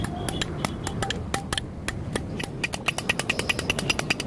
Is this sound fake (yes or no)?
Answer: no